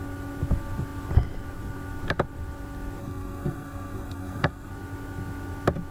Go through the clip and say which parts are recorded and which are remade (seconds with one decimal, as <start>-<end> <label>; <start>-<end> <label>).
0.0-3.0 recorded; 3.0-4.7 remade; 4.7-5.9 recorded